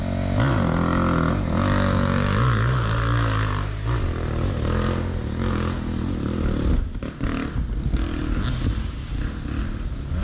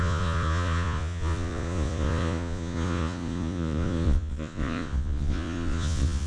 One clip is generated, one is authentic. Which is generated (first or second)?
second